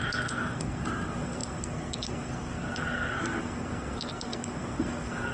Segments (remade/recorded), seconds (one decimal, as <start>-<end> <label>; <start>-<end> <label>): 0.0-5.3 remade